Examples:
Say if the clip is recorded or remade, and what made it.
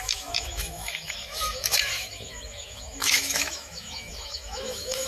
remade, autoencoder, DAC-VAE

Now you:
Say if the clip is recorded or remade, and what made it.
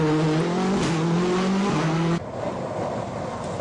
recorded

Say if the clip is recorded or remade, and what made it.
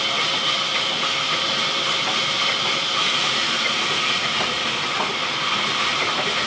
recorded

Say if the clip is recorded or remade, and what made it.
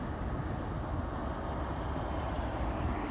recorded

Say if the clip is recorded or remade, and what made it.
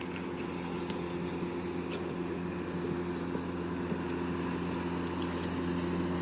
recorded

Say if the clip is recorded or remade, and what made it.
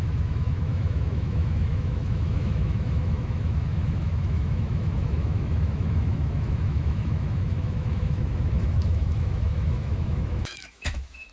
remade, autoencoder, DAC-VAE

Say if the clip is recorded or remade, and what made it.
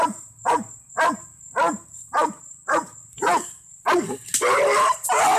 recorded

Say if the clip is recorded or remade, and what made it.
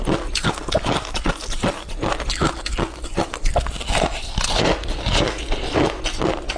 recorded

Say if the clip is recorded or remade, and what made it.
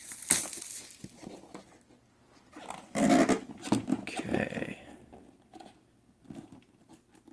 recorded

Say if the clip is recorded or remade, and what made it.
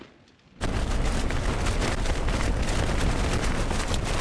recorded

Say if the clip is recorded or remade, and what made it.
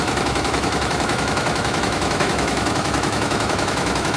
remade, autoencoder, DAC-VAE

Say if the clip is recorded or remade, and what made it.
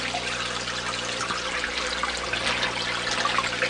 recorded